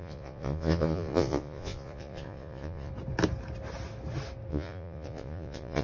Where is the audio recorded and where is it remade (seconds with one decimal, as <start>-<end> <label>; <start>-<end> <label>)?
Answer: 0.0-2.9 remade; 2.9-4.5 recorded; 4.5-5.8 remade